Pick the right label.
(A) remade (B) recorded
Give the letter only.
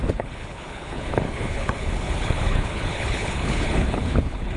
A